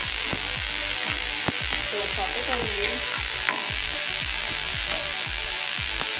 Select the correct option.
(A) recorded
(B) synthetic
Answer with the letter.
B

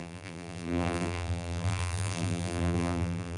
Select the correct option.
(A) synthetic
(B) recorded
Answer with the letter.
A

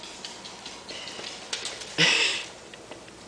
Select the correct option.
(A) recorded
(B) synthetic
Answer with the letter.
B